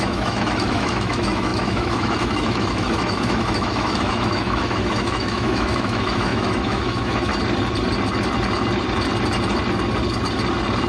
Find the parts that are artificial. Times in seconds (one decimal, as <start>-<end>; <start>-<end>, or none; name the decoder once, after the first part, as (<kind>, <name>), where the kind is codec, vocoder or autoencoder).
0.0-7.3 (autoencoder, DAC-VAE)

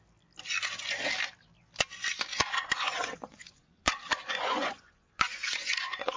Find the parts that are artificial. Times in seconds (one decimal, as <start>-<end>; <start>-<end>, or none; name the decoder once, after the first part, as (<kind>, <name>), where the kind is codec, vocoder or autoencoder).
2.3-6.2 (vocoder, Vocos)

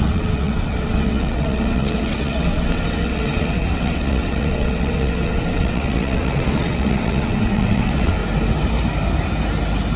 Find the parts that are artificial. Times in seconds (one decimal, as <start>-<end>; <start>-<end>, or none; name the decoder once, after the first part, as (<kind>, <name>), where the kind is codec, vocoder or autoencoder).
0.0-8.2 (vocoder, WaveNeXt)

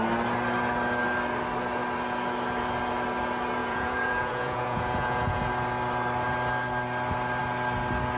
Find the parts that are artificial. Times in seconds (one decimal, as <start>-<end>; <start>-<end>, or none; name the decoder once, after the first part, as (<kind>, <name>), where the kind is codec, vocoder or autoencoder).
3.6-5.5 (vocoder, Vocos)

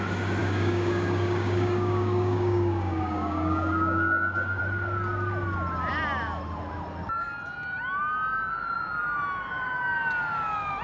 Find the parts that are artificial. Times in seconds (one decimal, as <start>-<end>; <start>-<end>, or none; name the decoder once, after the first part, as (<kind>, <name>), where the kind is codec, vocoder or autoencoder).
0.4-4.6 (codec, DAC)

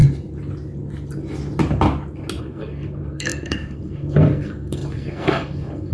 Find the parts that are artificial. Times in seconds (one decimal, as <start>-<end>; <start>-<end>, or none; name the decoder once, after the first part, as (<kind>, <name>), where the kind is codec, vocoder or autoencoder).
2.4-5.9 (codec, SNAC)